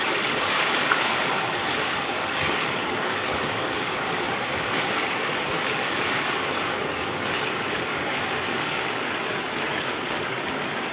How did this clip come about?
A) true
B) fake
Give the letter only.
B